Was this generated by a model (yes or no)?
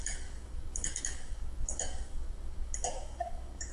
yes